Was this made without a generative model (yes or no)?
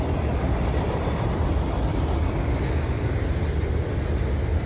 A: yes